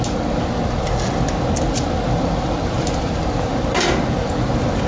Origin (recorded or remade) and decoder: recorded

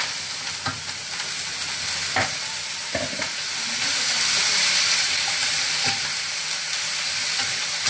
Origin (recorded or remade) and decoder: recorded